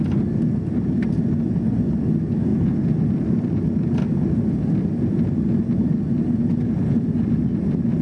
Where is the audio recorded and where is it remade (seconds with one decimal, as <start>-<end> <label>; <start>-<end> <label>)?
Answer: 0.0-8.0 recorded